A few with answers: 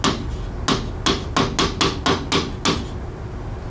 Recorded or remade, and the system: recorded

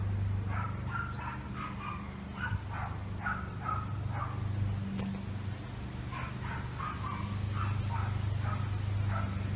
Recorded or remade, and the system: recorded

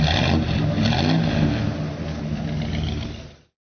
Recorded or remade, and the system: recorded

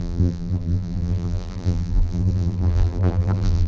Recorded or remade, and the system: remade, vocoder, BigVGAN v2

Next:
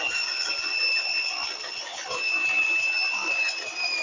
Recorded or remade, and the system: recorded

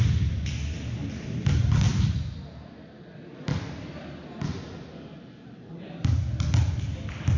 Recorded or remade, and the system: recorded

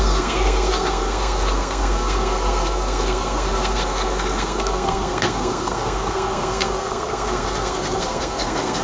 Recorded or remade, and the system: remade, codec, SNAC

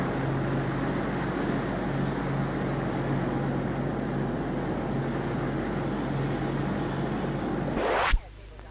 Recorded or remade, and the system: recorded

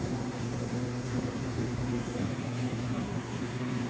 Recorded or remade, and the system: remade, codec, SNAC